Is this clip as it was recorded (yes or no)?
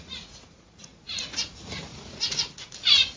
no